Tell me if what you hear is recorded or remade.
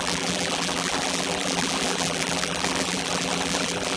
remade